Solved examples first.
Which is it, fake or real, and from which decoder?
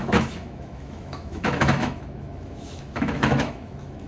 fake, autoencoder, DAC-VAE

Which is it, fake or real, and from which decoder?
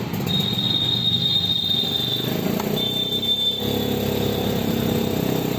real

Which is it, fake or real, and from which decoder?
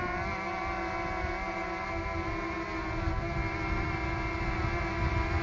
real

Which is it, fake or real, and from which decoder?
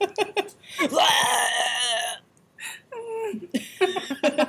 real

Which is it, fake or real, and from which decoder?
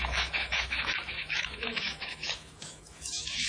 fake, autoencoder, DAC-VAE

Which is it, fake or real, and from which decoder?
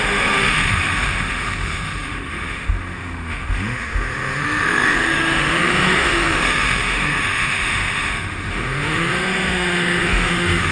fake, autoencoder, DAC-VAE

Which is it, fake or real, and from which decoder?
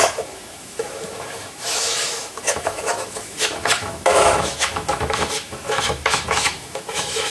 fake, autoencoder, DAC-VAE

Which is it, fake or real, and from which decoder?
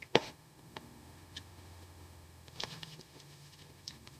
fake, autoencoder, DAC-VAE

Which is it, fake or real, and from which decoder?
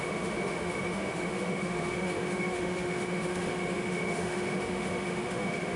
fake, autoencoder, DAC-VAE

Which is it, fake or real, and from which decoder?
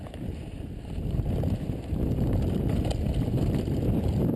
real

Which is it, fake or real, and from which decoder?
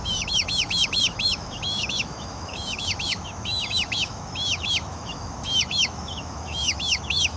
fake, autoencoder, DAC-VAE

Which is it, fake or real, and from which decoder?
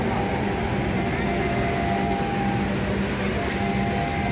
real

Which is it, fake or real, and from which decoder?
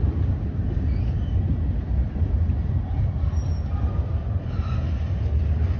real